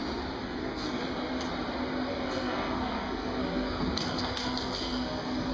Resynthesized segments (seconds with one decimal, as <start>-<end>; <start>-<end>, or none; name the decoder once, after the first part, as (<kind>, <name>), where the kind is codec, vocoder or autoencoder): 0.4-1.0 (codec, SNAC); 2.1-5.5